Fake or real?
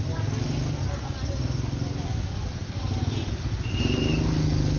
real